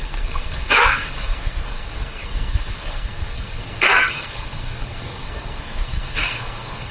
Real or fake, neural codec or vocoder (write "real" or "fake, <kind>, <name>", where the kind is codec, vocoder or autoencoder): fake, codec, SNAC